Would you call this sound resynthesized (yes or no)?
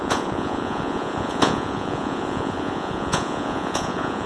yes